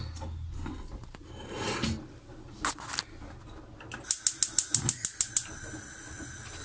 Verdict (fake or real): real